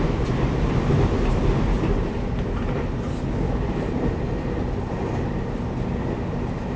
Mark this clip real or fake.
real